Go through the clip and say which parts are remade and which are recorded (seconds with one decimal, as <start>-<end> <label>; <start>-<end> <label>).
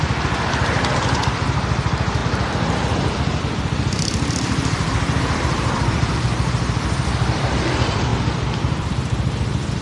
0.0-2.2 remade; 2.2-3.4 recorded; 3.4-9.8 remade